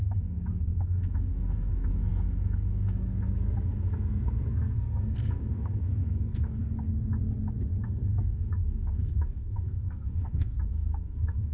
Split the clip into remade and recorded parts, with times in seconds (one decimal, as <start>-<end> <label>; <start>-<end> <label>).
0.0-6.6 remade; 6.6-7.8 recorded; 7.8-11.5 remade